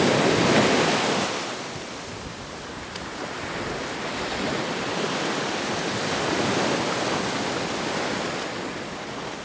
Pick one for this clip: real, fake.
real